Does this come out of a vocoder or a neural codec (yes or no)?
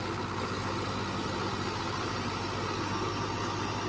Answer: no